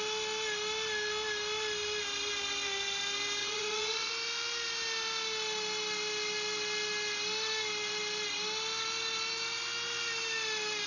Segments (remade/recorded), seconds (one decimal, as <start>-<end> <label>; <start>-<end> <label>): 0.0-3.4 recorded; 3.4-4.1 remade; 4.1-10.9 recorded